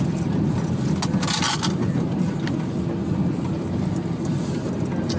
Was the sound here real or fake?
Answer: real